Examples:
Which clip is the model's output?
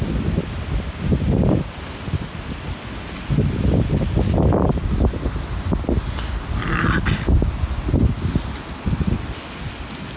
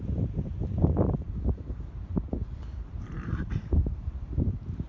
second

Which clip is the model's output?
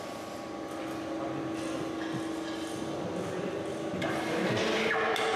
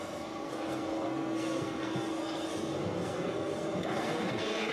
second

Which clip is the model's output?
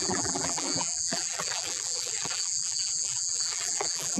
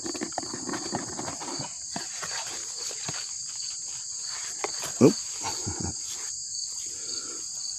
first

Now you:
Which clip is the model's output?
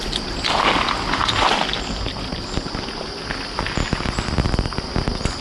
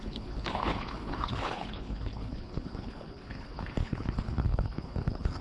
second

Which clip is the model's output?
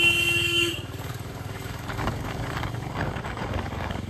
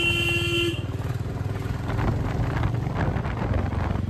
first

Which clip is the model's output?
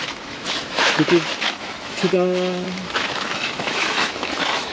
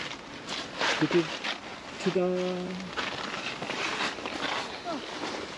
first